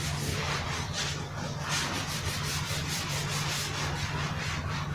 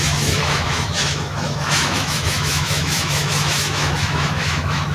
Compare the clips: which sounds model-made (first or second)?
second